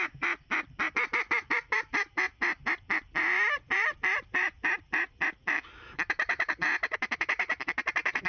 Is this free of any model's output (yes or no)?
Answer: no